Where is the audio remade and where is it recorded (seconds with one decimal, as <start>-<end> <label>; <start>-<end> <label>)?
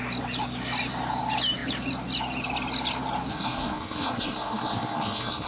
0.0-3.3 recorded; 3.3-5.5 remade